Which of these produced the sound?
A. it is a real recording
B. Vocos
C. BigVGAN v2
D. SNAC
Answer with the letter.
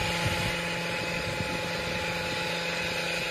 A